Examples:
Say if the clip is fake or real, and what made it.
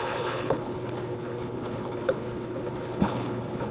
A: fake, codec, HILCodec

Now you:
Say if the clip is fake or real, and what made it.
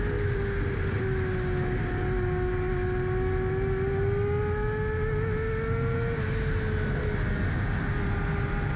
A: real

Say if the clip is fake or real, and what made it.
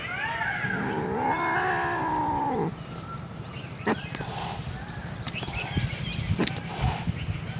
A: real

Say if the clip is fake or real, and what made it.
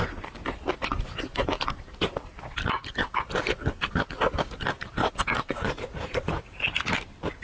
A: real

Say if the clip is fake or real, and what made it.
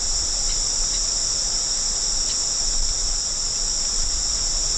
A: real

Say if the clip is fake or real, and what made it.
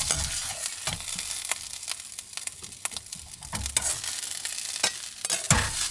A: real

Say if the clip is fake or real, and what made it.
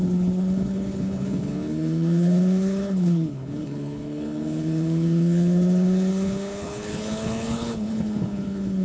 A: fake, codec, HILCodec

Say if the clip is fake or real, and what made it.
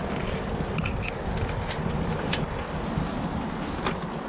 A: real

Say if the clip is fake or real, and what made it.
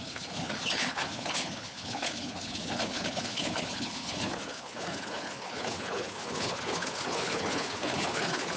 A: fake, codec, HILCodec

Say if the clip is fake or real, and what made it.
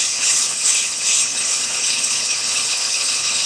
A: fake, codec, HILCodec